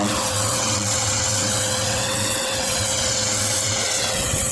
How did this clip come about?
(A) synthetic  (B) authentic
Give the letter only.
A